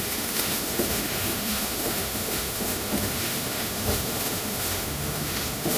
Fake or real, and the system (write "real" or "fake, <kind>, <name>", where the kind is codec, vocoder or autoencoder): fake, autoencoder, DAC-VAE